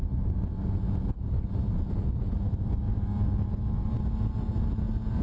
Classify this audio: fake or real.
fake